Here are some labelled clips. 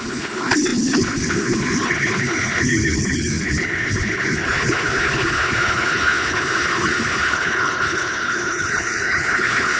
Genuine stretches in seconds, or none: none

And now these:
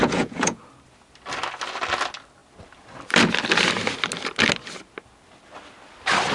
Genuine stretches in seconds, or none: 0.6-6.3

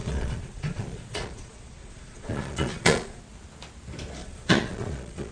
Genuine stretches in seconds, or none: 3.2-4.2

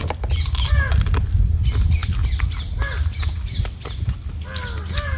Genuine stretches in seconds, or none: 0.0-5.2

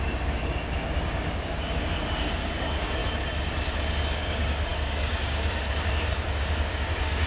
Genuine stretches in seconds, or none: 3.0-4.2